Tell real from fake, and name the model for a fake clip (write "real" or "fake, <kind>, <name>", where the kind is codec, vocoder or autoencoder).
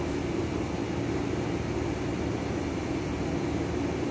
real